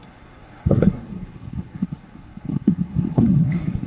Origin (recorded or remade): remade